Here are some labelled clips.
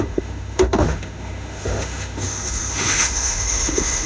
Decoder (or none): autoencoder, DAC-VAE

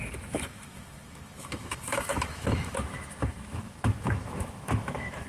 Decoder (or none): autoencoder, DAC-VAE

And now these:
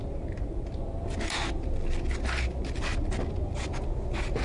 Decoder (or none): none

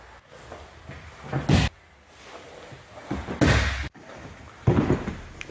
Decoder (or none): none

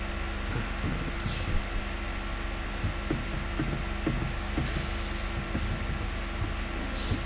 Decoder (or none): none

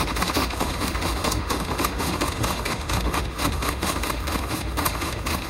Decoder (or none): autoencoder, DAC-VAE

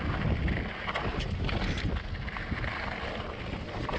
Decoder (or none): none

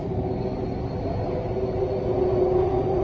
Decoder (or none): none